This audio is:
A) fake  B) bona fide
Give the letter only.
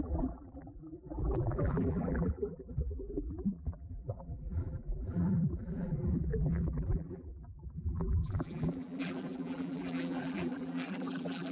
A